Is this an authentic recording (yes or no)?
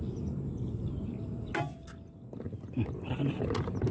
yes